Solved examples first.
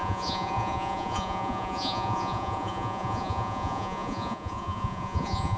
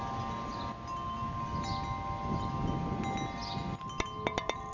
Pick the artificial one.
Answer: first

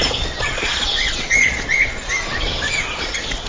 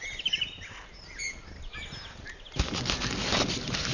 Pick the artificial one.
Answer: first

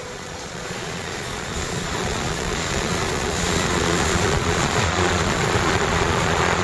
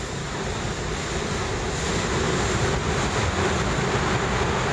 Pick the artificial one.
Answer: first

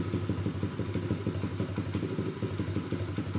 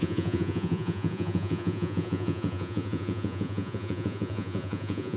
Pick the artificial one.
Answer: second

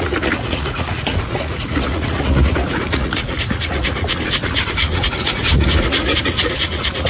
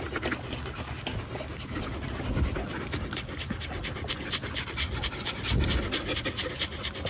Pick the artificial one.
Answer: first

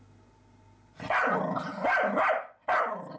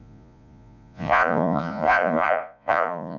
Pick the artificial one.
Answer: second